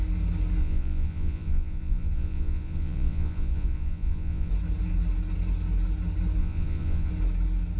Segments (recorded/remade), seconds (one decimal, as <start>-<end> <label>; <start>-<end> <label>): 0.0-0.6 recorded; 0.6-4.5 remade; 4.5-6.4 recorded; 6.4-7.1 remade; 7.1-7.8 recorded